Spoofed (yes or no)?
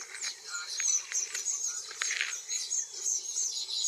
no